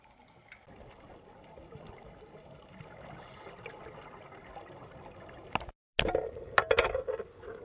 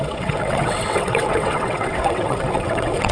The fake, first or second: second